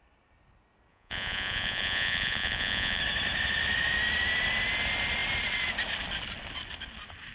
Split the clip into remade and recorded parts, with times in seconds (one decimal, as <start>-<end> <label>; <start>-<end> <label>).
0.0-0.9 recorded; 0.9-3.0 remade; 3.0-7.3 recorded